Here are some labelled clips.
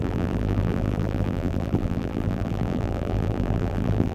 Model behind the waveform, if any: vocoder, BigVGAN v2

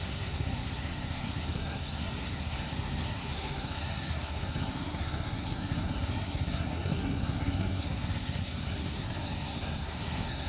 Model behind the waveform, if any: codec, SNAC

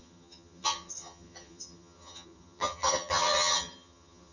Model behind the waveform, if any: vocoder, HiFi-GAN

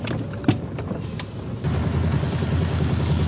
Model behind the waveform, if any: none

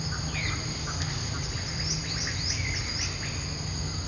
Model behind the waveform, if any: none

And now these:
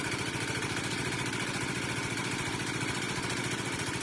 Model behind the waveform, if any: none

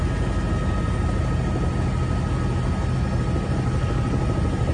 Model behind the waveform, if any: none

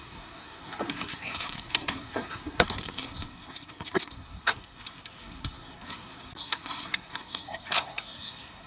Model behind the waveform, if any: codec, SNAC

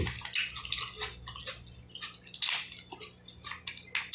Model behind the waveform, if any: none